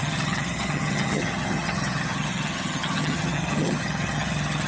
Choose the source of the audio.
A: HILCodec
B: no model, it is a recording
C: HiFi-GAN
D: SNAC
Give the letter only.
C